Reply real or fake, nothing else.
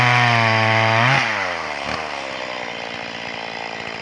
real